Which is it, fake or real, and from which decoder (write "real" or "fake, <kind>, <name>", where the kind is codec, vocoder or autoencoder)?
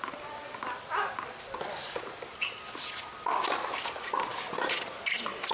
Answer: real